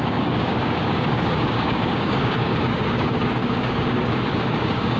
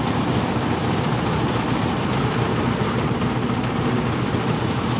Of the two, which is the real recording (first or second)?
second